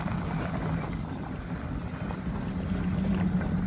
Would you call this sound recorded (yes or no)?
yes